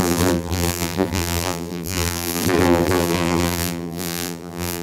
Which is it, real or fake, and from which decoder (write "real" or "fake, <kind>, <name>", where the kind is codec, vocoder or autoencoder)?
fake, vocoder, BigVGAN v2